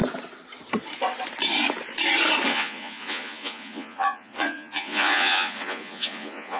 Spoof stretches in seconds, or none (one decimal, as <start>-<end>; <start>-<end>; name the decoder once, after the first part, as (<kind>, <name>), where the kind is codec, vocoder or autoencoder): 2.5-6.6 (vocoder, Vocos)